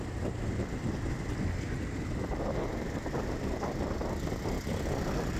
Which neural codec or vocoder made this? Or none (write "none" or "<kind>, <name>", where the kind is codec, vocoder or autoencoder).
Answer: none